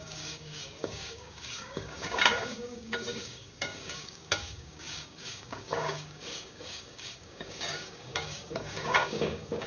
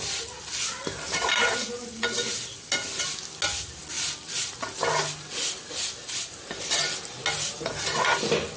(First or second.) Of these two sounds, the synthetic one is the first